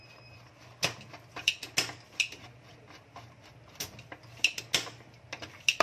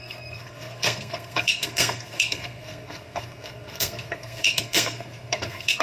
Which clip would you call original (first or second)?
first